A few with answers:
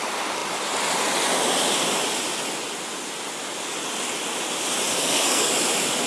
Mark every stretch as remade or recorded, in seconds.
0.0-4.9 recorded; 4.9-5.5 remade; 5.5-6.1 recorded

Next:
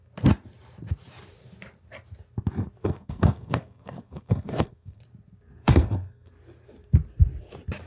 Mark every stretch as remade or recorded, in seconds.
0.0-2.8 recorded; 2.8-5.0 remade; 5.0-5.6 recorded; 5.6-6.3 remade; 6.3-7.9 recorded

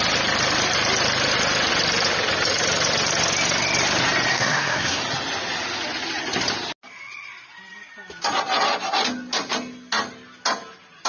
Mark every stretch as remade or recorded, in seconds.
0.0-4.3 recorded; 4.3-5.0 remade; 5.0-11.1 recorded

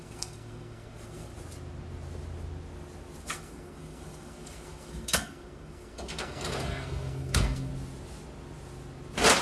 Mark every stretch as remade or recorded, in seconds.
0.0-1.3 remade; 1.3-3.2 recorded; 3.2-7.7 remade; 7.7-9.4 recorded

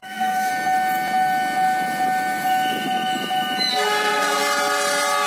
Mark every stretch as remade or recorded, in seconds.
0.0-0.5 remade; 0.5-3.7 recorded; 3.7-4.4 remade; 4.4-5.3 recorded

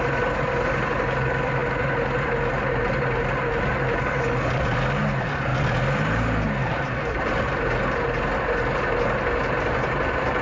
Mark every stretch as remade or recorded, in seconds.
0.0-10.4 recorded

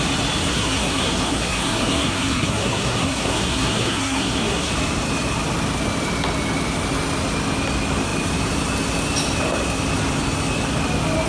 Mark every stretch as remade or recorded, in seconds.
0.0-0.5 recorded; 0.5-4.7 remade; 4.7-11.3 recorded

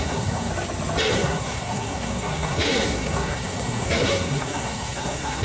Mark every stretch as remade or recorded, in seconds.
0.0-0.5 remade; 0.5-1.1 recorded; 1.1-5.4 remade